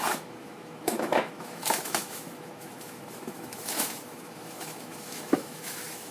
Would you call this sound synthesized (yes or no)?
yes